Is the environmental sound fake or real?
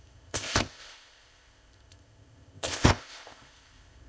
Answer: fake